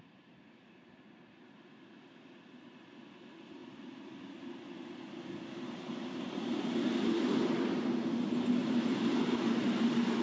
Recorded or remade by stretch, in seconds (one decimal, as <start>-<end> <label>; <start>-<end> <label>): 0.0-10.2 recorded